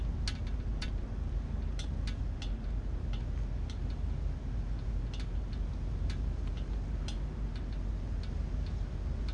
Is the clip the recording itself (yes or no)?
yes